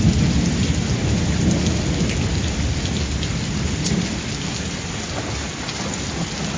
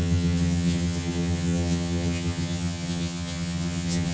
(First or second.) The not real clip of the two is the second